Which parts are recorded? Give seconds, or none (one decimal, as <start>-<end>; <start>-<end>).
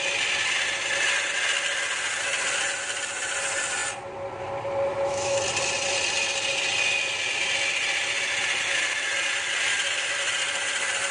0.0-4.9; 5.4-11.1